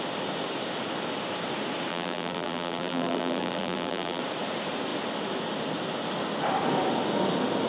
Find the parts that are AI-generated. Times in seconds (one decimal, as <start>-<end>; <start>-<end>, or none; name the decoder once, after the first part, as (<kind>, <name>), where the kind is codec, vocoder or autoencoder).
1.9-4.2 (vocoder, BigVGAN v2)